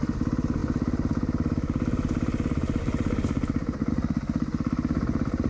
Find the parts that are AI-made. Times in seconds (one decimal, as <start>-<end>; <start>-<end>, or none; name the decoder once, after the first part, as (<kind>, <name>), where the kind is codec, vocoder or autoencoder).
none